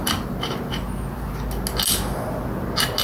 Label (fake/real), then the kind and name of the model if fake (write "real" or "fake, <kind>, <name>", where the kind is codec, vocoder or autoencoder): real